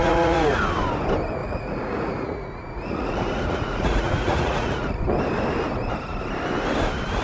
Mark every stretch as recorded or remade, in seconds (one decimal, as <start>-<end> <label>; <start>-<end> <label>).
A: 0.0-0.6 remade; 0.6-1.4 recorded; 1.4-5.0 remade; 5.0-7.2 recorded